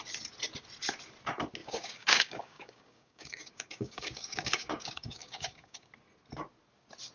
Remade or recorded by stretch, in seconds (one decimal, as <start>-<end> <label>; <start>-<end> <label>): 0.0-1.6 recorded; 1.6-5.9 remade; 5.9-7.1 recorded